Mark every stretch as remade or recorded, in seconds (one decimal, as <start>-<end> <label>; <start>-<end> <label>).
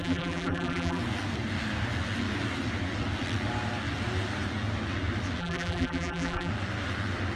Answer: 0.0-1.0 remade; 1.0-5.4 recorded; 5.4-6.5 remade; 6.5-7.4 recorded